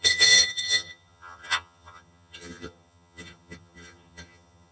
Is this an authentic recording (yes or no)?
no